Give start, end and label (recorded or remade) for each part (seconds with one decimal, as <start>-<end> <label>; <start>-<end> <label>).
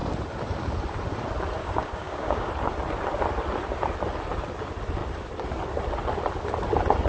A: 0.0-1.6 recorded; 1.6-2.5 remade; 2.5-7.1 recorded